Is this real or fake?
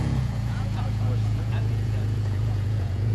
fake